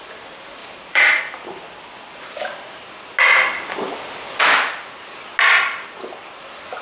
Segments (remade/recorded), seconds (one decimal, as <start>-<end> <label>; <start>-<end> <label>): 0.0-0.6 recorded; 0.6-1.2 remade; 1.2-6.8 recorded